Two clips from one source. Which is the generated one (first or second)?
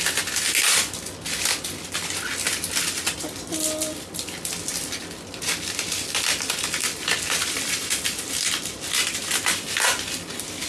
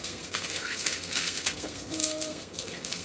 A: second